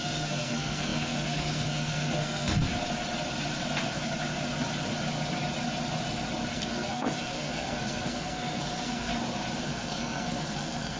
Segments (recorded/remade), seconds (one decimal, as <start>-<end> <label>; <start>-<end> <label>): 0.0-2.7 remade; 2.7-6.5 recorded; 6.5-9.1 remade; 9.1-9.6 recorded; 9.6-11.0 remade